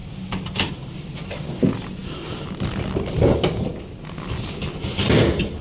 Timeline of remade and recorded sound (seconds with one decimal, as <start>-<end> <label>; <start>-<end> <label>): 0.0-5.6 recorded